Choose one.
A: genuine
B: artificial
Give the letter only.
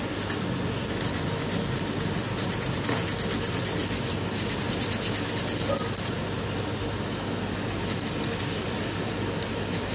A